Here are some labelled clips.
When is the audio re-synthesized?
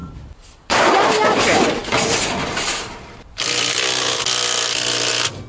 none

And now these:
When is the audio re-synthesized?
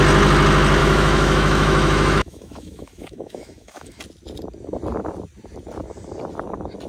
0.8-4.0 (autoencoder, DAC-VAE)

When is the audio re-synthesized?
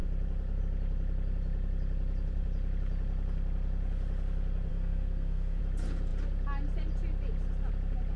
4.7-5.6 (codec, SNAC)